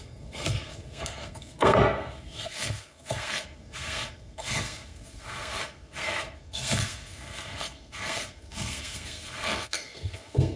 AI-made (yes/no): yes